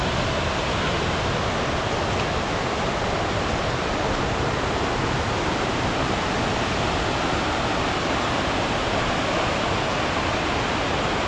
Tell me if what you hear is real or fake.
real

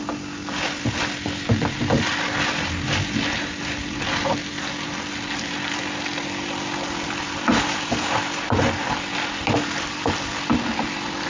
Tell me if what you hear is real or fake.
real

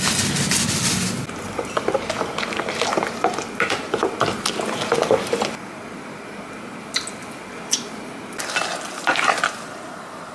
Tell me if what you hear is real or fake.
real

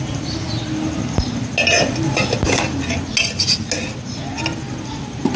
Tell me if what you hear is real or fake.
real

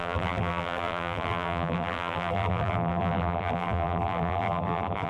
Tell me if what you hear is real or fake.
fake